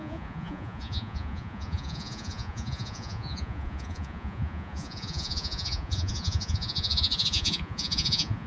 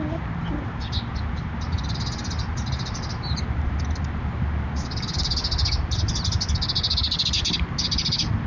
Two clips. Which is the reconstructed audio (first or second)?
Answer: first